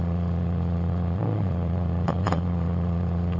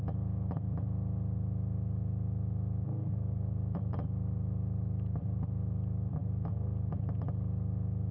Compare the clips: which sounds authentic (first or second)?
second